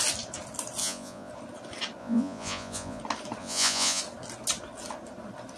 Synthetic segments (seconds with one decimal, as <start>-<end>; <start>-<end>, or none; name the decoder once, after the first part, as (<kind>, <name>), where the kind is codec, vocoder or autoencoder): 0.8-1.3 (vocoder, Vocos); 2.0-3.0; 3.4-4.0